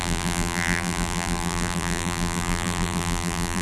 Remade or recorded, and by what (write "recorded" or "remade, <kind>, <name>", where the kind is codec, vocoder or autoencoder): remade, vocoder, BigVGAN v2